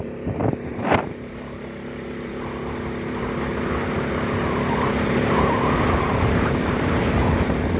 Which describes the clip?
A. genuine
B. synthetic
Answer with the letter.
A